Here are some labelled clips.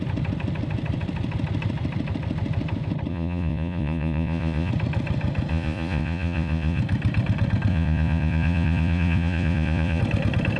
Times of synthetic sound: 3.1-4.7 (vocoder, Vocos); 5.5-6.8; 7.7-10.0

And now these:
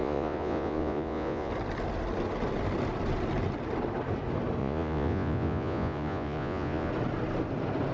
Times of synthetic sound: 0.0-1.5 (vocoder, Vocos); 4.6-6.9

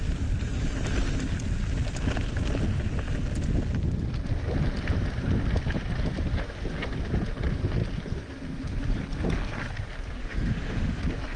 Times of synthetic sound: 10.2-11.0 (autoencoder, DAC-VAE)

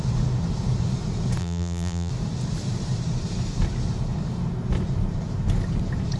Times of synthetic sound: 1.4-2.1 (vocoder, BigVGAN v2)